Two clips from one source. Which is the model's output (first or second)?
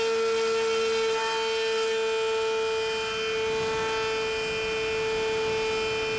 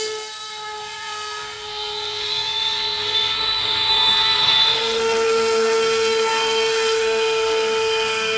second